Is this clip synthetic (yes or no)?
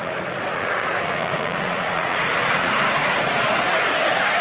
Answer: yes